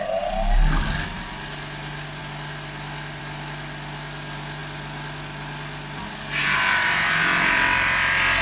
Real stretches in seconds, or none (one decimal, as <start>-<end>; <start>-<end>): 0.0-8.4